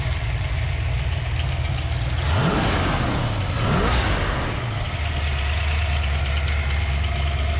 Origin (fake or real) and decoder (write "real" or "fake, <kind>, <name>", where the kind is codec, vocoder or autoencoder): real